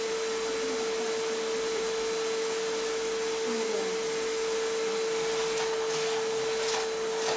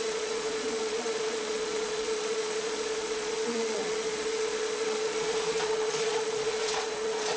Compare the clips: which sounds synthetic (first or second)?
second